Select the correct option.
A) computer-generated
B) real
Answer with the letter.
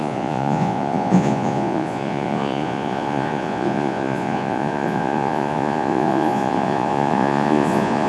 A